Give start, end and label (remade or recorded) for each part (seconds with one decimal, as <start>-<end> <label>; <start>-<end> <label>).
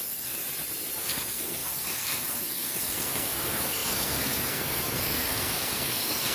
0.0-0.4 remade; 0.4-1.0 recorded; 1.0-6.3 remade